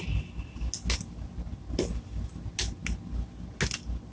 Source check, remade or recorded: recorded